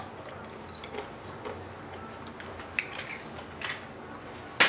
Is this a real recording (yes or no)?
yes